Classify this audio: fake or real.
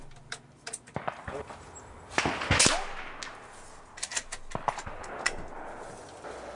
real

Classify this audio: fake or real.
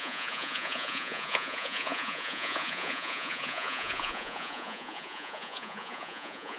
fake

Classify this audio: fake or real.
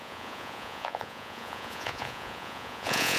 fake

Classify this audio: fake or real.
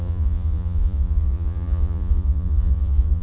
fake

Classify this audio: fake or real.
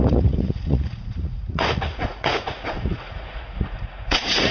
fake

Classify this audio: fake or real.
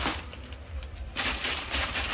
real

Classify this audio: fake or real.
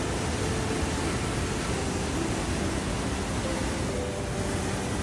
real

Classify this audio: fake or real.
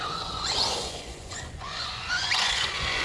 fake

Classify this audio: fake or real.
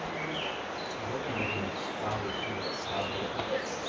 real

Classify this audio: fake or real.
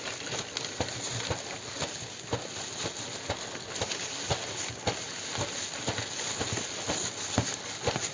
real